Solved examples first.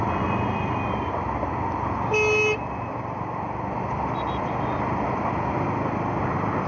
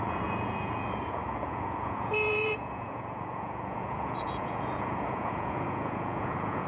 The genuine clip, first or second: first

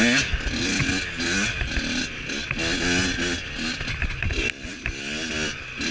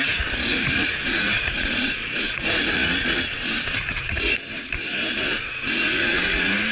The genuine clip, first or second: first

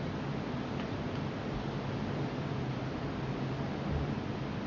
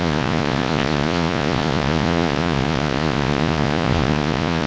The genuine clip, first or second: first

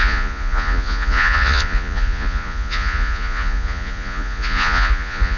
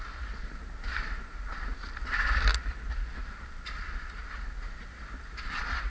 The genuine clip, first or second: second